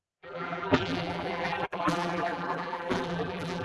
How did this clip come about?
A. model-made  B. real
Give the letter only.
A